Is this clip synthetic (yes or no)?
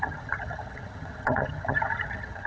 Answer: yes